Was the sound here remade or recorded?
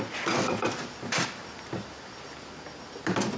recorded